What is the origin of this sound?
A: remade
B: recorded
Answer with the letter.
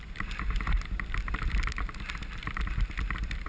B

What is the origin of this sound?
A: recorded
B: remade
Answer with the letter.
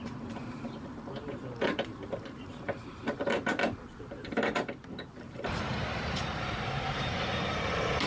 B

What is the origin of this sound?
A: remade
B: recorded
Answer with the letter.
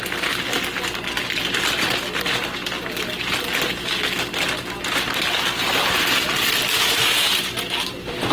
B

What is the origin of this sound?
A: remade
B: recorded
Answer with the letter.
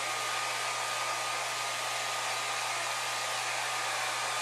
B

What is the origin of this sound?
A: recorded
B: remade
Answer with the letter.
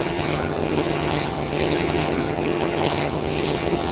B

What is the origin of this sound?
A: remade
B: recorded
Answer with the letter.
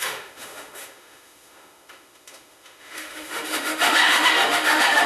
A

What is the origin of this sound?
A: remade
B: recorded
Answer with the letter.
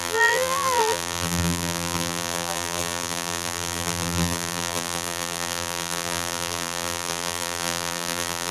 A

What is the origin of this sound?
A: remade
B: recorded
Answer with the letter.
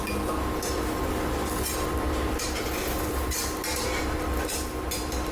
B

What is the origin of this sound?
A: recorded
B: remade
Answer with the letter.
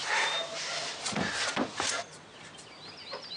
A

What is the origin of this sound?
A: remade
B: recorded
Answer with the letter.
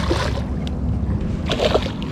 B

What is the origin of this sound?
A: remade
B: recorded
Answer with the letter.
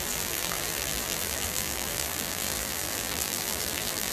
A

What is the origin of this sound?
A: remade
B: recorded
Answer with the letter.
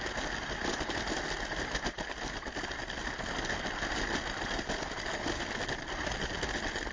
B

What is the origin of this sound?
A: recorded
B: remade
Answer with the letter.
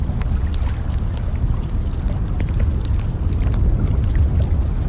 A